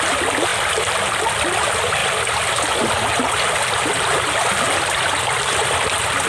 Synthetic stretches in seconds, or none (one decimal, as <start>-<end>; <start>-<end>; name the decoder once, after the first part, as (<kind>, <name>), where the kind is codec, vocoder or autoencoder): none